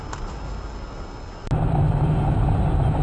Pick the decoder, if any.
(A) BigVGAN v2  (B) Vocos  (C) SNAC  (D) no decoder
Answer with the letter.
D